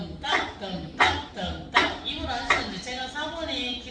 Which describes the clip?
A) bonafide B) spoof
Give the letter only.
A